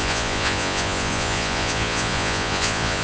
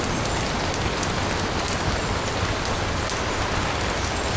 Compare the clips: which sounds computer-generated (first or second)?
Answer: first